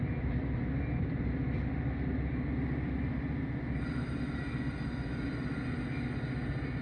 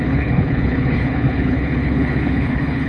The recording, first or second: first